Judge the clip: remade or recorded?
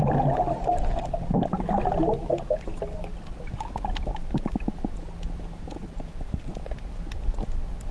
recorded